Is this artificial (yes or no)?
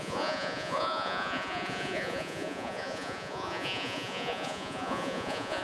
yes